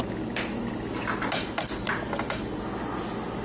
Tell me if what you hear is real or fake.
real